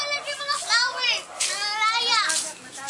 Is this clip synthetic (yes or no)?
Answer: no